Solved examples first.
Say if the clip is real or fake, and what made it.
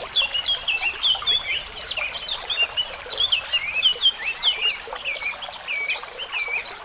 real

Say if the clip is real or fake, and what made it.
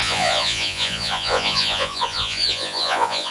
fake, vocoder, Vocos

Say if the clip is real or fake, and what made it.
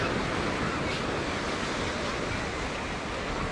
real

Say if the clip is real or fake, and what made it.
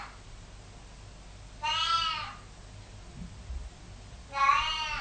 real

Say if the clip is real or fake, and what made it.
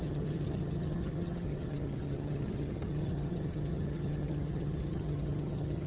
fake, vocoder, HiFi-GAN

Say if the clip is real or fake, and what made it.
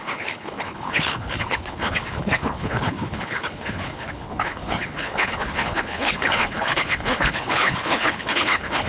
fake, codec, HILCodec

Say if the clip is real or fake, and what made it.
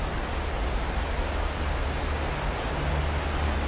real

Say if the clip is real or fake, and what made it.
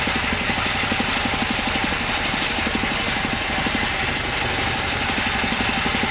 real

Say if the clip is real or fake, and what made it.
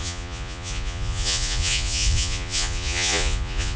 fake, vocoder, Vocos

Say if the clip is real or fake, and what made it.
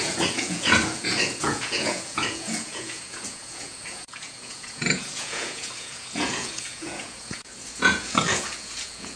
fake, vocoder, Vocos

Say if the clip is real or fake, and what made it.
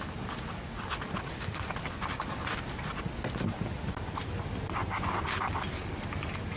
real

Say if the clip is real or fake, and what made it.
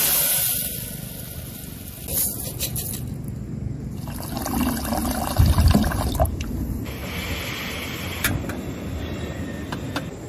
real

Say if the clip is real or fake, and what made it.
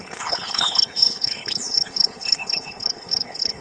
fake, codec, HILCodec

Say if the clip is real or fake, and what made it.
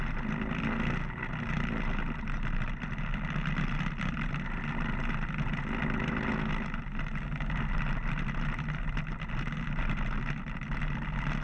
real